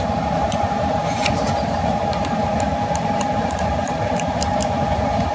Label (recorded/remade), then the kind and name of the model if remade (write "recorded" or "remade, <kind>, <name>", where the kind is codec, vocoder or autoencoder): remade, vocoder, BigVGAN v2